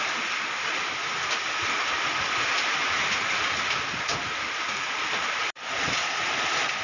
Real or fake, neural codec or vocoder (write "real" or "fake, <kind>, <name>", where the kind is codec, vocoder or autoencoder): real